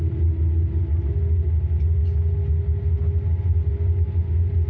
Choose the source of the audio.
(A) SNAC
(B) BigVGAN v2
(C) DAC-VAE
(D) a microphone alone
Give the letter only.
D